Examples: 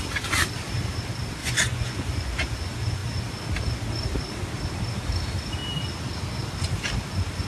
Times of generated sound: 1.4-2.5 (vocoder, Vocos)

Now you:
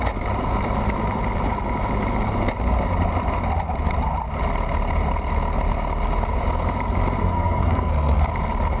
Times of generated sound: 7.2-8.3 (codec, SNAC)

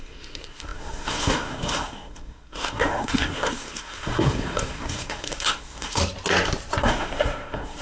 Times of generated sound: 0.0-6.0 (codec, SNAC); 6.8-7.8

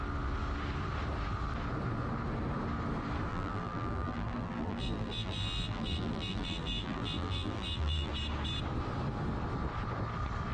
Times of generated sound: 3.3-8.1 (vocoder, BigVGAN v2)

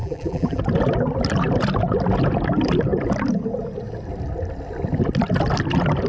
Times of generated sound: 0.0-0.6 (vocoder, BigVGAN v2)